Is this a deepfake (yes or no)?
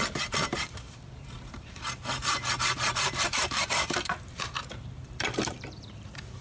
yes